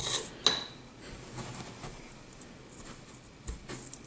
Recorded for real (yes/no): yes